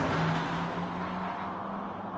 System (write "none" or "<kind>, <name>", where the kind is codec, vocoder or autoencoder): none